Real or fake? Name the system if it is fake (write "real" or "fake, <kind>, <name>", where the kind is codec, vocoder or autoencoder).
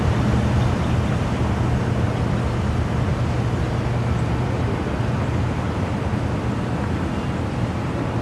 real